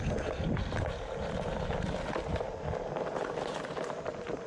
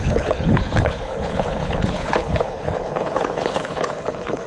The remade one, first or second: second